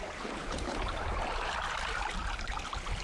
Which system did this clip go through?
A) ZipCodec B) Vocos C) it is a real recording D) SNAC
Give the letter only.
C